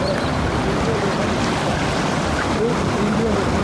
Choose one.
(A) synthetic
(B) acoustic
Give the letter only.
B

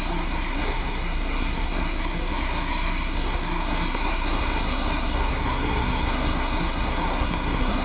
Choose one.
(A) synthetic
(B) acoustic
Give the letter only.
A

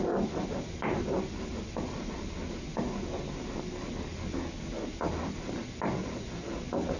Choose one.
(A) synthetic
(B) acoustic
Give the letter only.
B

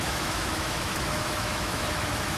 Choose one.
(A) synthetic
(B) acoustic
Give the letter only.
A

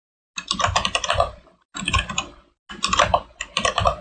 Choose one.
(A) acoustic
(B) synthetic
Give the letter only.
A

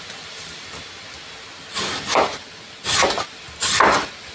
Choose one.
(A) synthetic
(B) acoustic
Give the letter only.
B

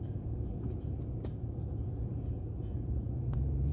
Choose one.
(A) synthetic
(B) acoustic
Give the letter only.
A